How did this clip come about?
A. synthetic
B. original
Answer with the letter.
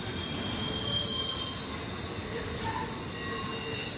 B